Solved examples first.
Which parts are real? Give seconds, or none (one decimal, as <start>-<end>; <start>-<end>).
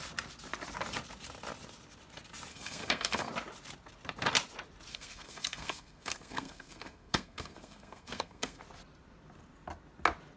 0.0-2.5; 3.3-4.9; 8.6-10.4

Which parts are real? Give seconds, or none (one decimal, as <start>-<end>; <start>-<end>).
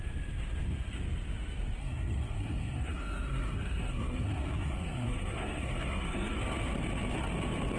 0.0-1.8; 6.4-7.8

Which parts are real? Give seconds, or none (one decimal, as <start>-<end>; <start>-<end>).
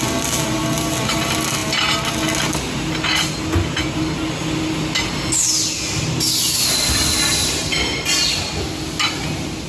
0.0-9.7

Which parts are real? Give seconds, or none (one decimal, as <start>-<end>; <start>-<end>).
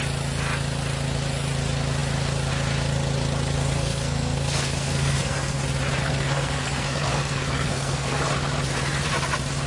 0.0-3.6; 5.6-6.0; 8.2-9.7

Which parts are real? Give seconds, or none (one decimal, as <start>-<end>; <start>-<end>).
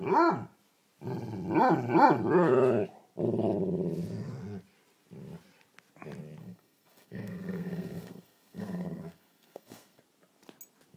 0.0-6.4; 10.0-11.0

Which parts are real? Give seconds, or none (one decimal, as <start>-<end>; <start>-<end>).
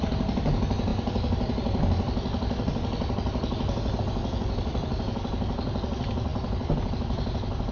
0.0-7.7